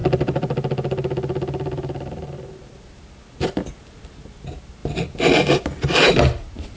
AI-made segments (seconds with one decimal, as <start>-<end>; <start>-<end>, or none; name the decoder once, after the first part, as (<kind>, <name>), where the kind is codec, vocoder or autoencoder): none

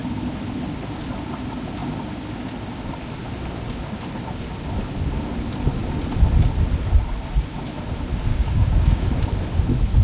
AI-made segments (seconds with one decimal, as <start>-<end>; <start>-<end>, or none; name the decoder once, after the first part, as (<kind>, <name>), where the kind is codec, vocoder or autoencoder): 8.3-9.1 (codec, DAC)

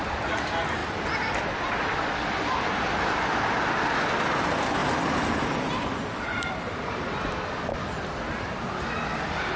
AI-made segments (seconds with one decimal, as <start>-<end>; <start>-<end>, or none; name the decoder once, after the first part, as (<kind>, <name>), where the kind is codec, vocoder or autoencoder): none